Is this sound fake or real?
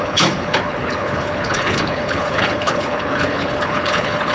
fake